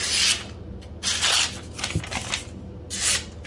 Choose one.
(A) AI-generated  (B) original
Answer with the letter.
B